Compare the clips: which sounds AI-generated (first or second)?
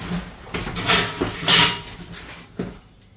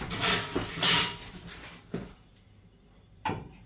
second